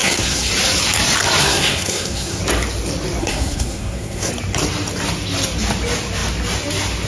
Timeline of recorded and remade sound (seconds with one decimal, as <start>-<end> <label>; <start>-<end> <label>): 0.0-0.5 remade; 0.5-1.4 recorded; 1.4-2.4 remade; 2.4-3.2 recorded; 3.2-4.3 remade; 4.3-7.1 recorded